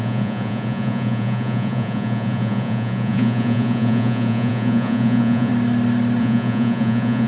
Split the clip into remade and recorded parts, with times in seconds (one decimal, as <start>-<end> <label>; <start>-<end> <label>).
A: 0.0-5.5 remade; 5.5-6.2 recorded; 6.2-7.3 remade